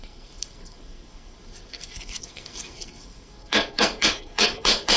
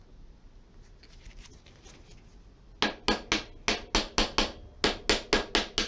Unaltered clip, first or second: second